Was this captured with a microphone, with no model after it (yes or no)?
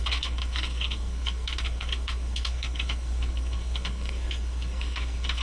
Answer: no